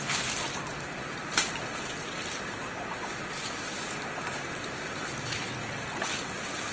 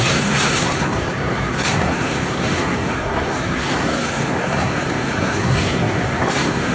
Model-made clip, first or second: second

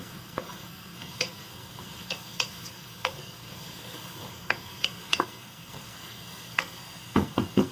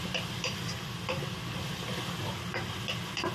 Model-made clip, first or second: first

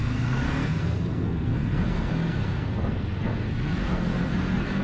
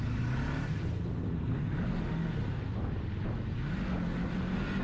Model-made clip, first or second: first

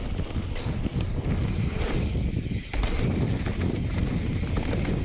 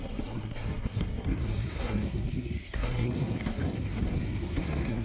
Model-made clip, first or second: second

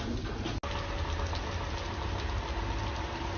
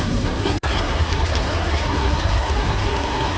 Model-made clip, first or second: second